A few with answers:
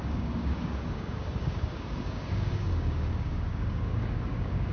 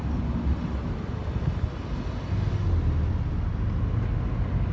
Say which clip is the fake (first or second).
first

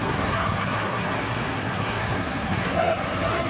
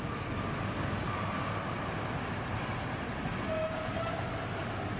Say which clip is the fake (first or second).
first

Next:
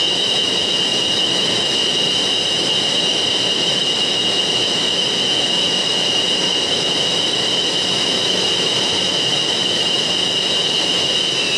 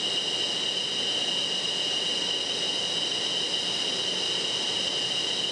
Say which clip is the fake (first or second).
first